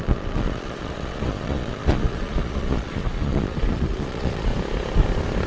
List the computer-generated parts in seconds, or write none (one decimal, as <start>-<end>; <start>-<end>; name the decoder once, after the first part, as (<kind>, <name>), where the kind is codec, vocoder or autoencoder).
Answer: 0.0-4.5 (vocoder, Vocos)